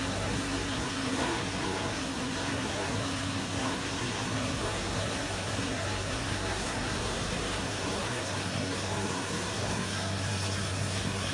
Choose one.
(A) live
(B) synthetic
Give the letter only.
B